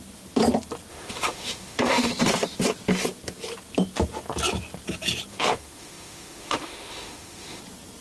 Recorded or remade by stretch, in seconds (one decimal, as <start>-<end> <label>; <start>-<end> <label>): 0.0-0.9 recorded; 0.9-2.1 remade; 2.1-5.3 recorded; 5.3-7.6 remade; 7.6-8.0 recorded